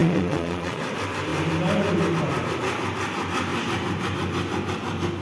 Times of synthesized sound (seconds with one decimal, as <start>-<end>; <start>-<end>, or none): 0.0-0.8